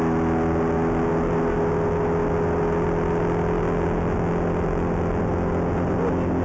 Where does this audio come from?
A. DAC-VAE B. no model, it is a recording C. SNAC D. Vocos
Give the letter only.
B